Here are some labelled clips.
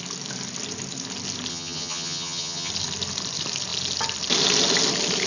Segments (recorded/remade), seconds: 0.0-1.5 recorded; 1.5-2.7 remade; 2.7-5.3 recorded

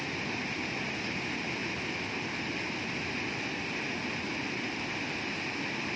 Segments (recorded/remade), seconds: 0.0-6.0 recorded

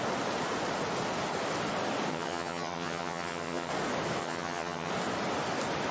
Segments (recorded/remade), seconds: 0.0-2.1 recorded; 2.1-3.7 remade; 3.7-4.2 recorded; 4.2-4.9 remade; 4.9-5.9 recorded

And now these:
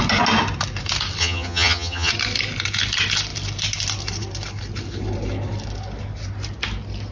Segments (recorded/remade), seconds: 0.0-1.2 recorded; 1.2-2.1 remade; 2.1-7.1 recorded

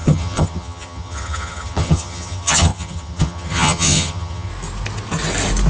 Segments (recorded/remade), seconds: 0.0-4.5 remade; 4.5-5.7 recorded